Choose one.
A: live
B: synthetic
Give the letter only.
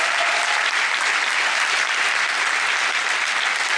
A